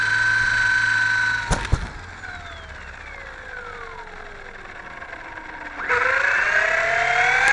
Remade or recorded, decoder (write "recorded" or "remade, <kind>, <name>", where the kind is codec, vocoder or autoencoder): recorded